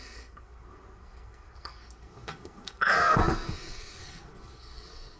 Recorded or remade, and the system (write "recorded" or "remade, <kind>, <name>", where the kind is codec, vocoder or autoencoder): remade, codec, SNAC